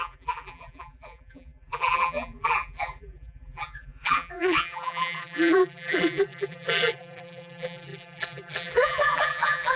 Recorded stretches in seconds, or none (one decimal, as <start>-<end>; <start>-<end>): none